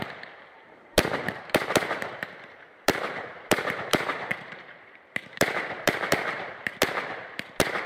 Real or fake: fake